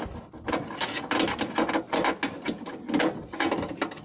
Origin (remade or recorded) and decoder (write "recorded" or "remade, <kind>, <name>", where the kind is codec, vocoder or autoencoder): recorded